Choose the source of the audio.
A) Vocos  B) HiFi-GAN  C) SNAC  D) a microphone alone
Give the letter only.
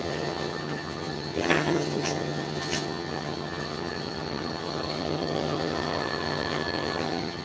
B